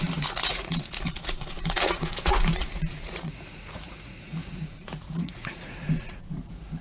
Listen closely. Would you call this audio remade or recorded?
remade